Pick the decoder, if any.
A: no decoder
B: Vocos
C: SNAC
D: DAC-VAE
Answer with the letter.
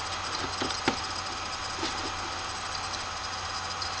A